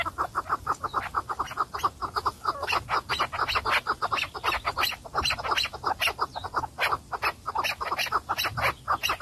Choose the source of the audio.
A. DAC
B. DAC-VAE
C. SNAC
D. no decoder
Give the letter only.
D